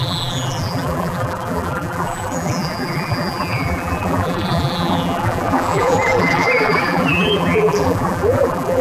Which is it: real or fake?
fake